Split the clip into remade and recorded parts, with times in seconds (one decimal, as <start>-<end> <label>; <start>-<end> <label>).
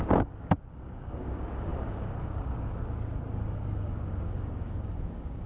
0.0-5.5 remade